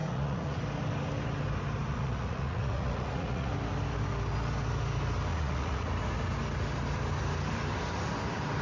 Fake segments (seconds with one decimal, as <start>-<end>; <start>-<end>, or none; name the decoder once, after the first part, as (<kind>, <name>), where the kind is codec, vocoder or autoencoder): 0.0-0.6 (vocoder, Vocos); 1.9-3.5; 5.3-5.9